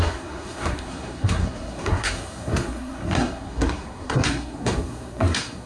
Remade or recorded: remade